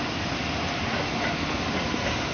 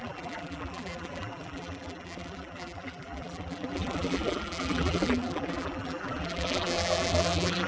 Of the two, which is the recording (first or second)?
first